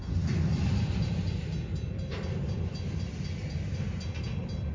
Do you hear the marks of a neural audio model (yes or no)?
no